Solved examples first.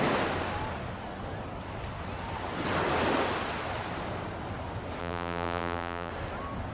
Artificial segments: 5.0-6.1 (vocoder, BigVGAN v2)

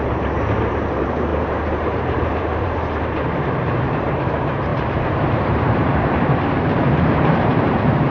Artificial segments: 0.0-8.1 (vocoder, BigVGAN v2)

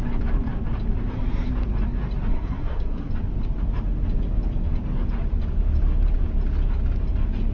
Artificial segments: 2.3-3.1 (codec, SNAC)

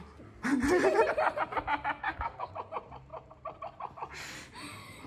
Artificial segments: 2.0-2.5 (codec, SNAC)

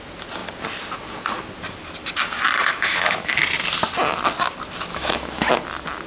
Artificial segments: 2.7-3.4 (autoencoder, DAC-VAE); 4.9-5.5

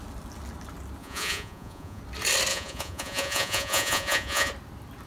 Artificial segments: 1.0-2.0 (vocoder, Vocos); 2.5-4.5

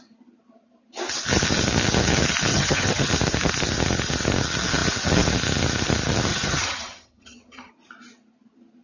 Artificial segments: 2.5-3.1 (vocoder, HiFi-GAN); 6.3-7.7

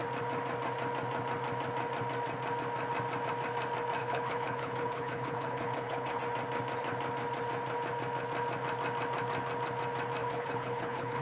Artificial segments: 4.0-6.2 (codec, HILCodec); 10.2-11.2